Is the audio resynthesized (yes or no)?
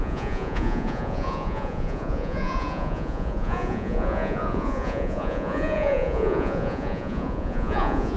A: yes